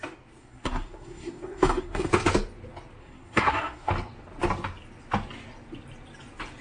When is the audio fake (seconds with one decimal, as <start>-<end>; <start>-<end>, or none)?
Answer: 0.4-2.1; 3.0-3.9